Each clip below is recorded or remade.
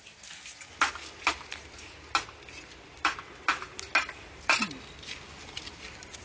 recorded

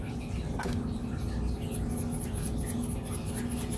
recorded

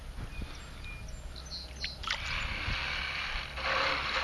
recorded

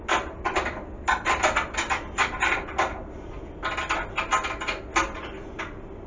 recorded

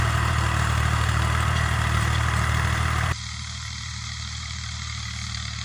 remade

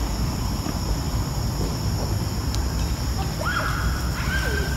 remade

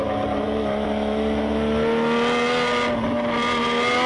recorded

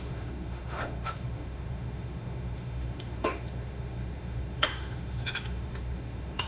remade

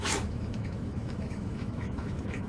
remade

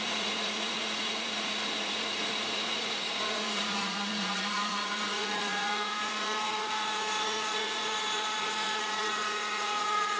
remade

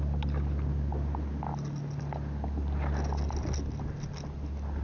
recorded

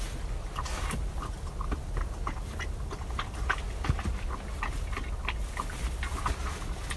recorded